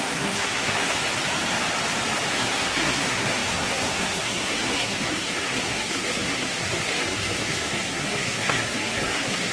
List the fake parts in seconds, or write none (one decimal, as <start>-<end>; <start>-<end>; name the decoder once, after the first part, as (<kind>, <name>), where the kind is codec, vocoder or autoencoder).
0.0-1.0 (codec, SNAC); 2.3-9.5